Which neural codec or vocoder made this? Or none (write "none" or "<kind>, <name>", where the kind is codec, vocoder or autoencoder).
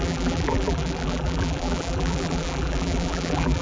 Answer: vocoder, BigVGAN v2